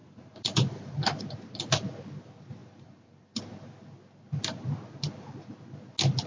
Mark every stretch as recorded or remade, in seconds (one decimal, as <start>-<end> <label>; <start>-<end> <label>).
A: 0.0-1.2 remade; 1.2-2.6 recorded; 2.6-3.4 remade; 3.4-6.3 recorded